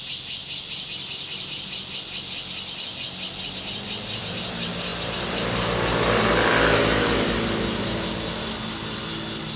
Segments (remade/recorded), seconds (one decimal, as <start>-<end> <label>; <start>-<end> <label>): 0.0-9.6 recorded